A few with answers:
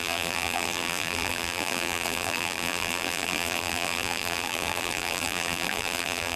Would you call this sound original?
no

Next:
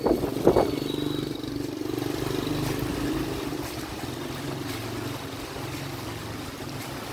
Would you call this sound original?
yes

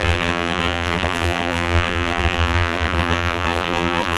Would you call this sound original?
no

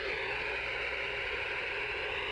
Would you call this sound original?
no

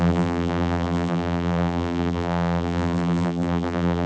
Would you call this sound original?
no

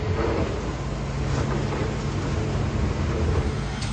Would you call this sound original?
yes